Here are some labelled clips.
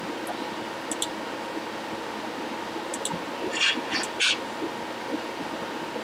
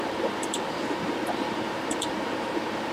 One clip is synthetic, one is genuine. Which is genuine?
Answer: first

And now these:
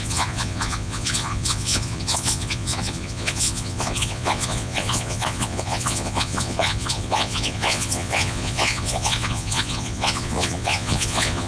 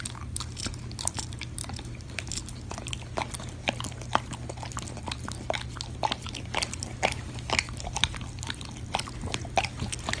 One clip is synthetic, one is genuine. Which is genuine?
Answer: second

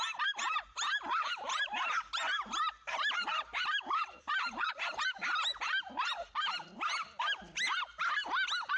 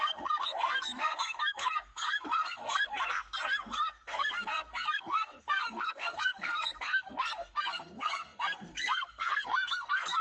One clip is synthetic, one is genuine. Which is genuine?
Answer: first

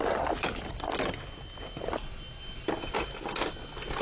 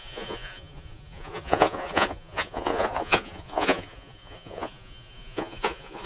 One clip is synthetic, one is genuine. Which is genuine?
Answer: first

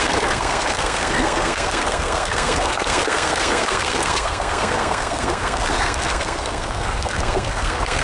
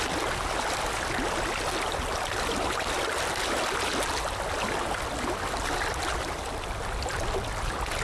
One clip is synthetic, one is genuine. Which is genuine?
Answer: second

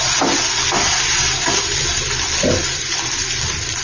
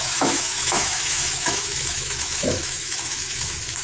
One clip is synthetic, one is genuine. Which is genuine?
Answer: first